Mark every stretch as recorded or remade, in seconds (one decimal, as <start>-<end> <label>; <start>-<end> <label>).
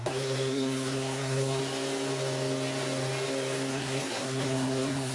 0.0-1.6 remade; 1.6-3.7 recorded; 3.7-5.1 remade